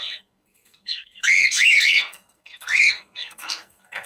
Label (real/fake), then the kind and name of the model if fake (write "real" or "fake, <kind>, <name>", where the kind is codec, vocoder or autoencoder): fake, codec, SNAC